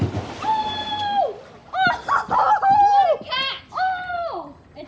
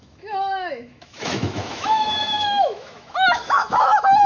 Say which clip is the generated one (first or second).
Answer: second